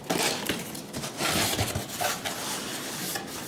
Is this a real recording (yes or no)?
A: yes